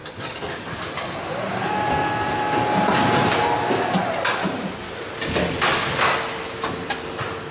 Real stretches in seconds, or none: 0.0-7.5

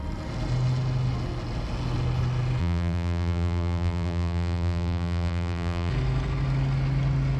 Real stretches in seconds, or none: 0.0-2.6; 5.9-7.4

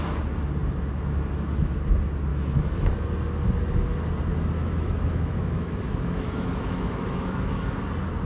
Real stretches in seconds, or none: 0.0-2.3; 2.9-4.6; 7.6-8.2

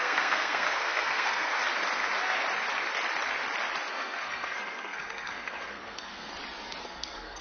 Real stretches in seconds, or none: 1.6-3.9; 6.3-6.8

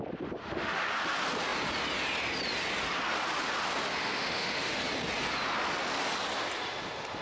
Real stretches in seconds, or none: 0.0-0.4; 0.9-4.0; 4.8-7.2

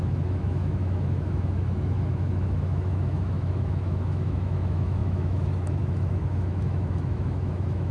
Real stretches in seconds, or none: none